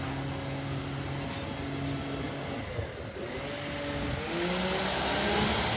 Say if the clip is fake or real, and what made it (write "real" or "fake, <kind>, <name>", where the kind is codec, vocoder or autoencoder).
real